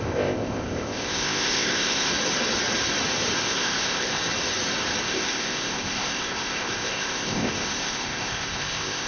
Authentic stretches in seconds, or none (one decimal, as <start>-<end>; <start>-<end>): 2.1-3.4; 4.2-5.0